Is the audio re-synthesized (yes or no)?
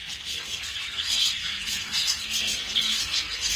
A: yes